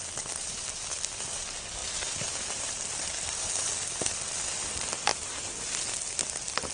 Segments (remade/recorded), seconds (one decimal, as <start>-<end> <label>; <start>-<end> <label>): 0.0-0.7 remade; 0.7-1.8 recorded; 1.8-3.9 remade; 3.9-5.1 recorded; 5.1-5.7 remade; 5.7-6.7 recorded